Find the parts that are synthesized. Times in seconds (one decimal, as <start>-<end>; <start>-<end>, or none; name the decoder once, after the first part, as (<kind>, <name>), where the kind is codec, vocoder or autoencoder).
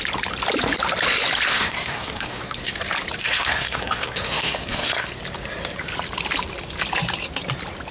1.5-2.8 (codec, SNAC); 3.2-5.2